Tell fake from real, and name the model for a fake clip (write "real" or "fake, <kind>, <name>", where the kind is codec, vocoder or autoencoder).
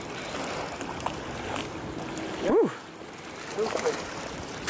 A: real